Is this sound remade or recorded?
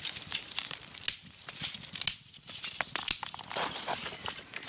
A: recorded